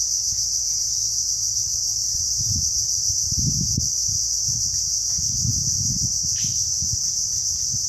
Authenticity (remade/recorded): recorded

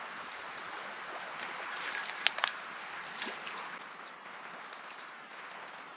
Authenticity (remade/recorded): recorded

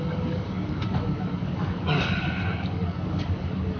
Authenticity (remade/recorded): remade